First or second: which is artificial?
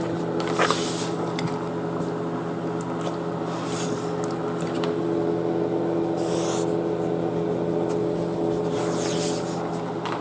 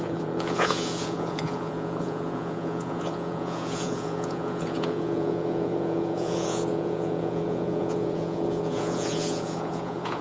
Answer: second